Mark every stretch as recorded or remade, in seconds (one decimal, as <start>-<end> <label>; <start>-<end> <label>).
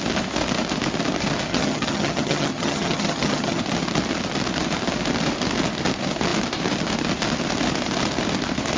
0.0-1.5 recorded; 1.5-3.6 remade; 3.6-8.8 recorded